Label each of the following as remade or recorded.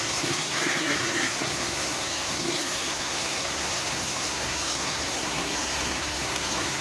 remade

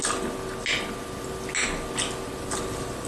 recorded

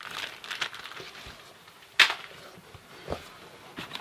recorded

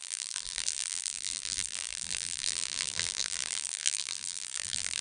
remade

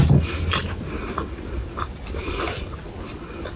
recorded